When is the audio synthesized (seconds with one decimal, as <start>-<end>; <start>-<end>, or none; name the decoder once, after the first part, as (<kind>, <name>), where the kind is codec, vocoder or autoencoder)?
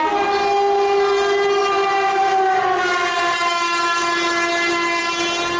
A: none